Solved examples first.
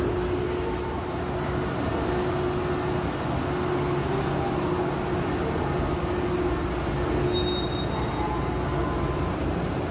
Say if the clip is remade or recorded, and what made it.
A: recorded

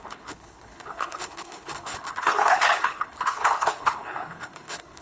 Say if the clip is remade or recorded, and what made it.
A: remade, codec, HILCodec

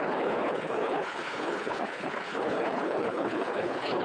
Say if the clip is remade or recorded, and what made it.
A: remade, codec, HILCodec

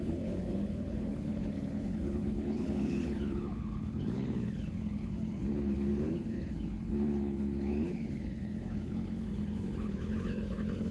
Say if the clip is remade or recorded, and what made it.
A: remade, codec, HILCodec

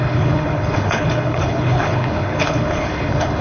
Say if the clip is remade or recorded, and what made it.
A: remade, codec, HILCodec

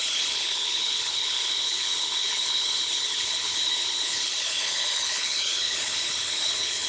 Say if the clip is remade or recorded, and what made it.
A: remade, codec, HILCodec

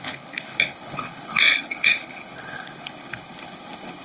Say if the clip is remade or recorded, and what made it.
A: remade, codec, HILCodec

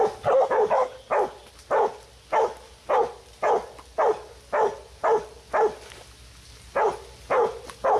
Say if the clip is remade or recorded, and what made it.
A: recorded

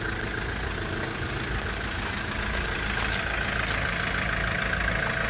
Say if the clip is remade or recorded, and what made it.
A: recorded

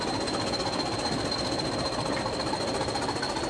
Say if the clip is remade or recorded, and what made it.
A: recorded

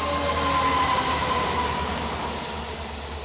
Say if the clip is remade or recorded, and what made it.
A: recorded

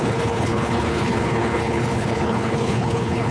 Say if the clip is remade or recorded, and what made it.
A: remade, codec, HILCodec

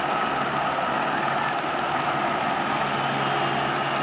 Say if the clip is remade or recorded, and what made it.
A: recorded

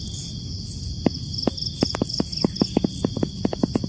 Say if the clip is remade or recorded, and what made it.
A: recorded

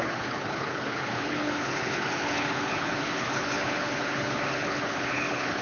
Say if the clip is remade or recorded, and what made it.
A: remade, codec, HILCodec